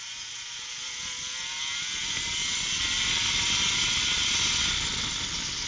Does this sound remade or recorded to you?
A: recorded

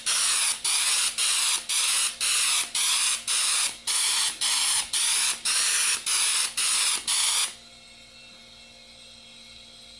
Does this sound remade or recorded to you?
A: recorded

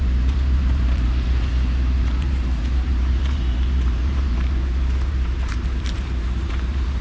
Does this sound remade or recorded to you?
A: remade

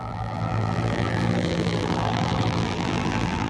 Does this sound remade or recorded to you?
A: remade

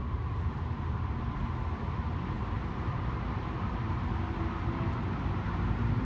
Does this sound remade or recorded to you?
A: recorded